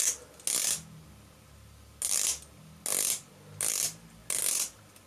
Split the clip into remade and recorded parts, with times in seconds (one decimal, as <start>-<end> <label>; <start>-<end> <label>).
0.0-5.1 recorded